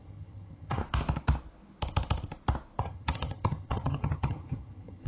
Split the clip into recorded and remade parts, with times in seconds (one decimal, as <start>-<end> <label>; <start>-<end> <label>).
0.0-0.8 remade; 0.8-2.8 recorded; 2.8-5.1 remade